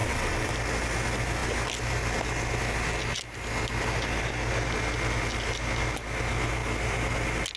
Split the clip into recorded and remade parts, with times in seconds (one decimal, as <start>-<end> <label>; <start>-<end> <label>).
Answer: 0.0-0.5 remade; 0.5-7.6 recorded